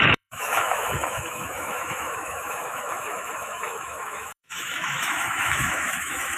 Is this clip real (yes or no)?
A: no